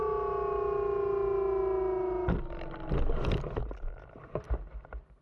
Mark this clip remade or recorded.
recorded